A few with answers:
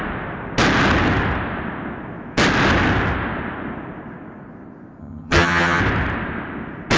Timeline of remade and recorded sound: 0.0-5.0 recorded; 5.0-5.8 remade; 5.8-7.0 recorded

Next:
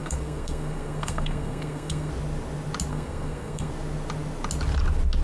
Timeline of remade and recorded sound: 0.0-2.1 remade; 2.1-2.9 recorded; 2.9-3.7 remade; 3.7-5.2 recorded

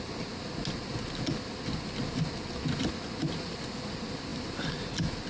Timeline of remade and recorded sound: 0.0-5.3 recorded

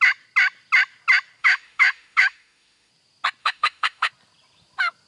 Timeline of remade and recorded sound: 0.0-1.4 recorded; 1.4-2.9 remade; 2.9-3.4 recorded; 3.4-4.1 remade; 4.1-5.1 recorded

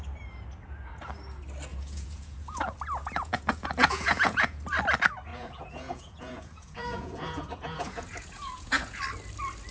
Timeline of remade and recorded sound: 0.0-1.7 recorded; 1.7-2.6 remade; 2.6-3.0 recorded; 3.0-4.6 remade; 4.6-5.3 recorded; 5.3-9.0 remade; 9.0-9.7 recorded

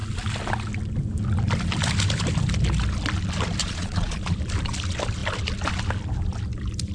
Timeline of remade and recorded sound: 0.0-3.6 recorded; 3.6-4.2 remade; 4.2-6.9 recorded

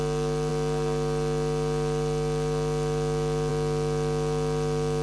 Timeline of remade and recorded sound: 0.0-5.0 recorded

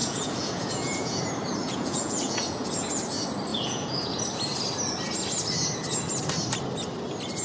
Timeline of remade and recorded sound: 0.0-1.2 remade; 1.2-1.6 recorded; 1.6-2.7 remade; 2.7-3.5 recorded; 3.5-4.2 remade; 4.2-7.4 recorded